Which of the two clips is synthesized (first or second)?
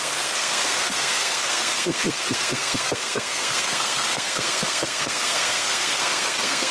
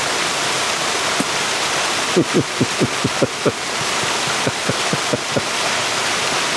first